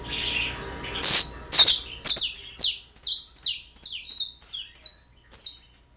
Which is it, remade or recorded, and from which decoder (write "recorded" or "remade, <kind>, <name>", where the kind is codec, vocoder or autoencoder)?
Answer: recorded